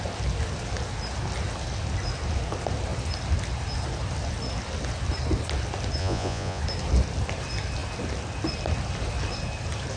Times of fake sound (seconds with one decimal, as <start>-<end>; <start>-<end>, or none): 6.0-6.6